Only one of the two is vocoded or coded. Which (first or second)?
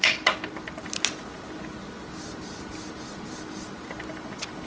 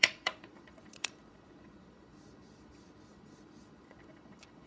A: second